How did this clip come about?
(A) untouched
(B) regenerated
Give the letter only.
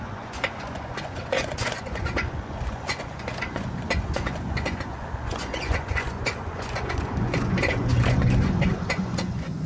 B